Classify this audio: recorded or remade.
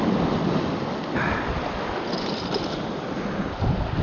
recorded